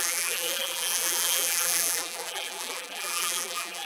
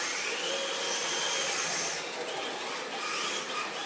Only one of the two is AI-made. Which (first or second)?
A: first